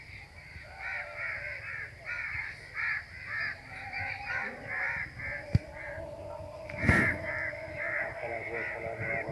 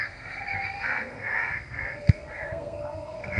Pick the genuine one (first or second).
first